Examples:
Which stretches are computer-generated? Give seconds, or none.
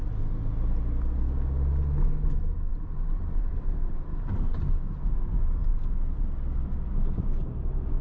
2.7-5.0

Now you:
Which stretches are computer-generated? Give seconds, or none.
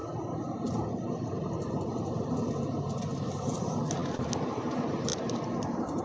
none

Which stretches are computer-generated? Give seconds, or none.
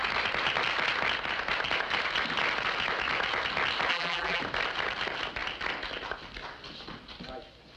3.9-4.4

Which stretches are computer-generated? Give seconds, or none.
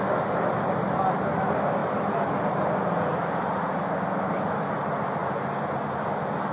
none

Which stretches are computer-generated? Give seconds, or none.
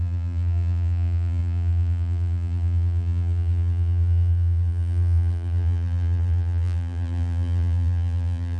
0.0-8.6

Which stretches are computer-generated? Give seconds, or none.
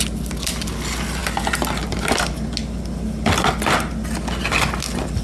none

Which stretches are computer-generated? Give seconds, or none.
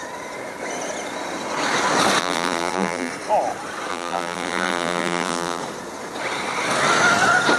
2.2-3.1; 3.9-5.6